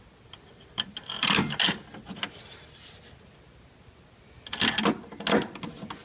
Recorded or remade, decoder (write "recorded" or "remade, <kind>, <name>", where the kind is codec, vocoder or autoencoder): recorded